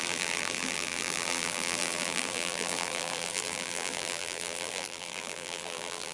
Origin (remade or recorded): remade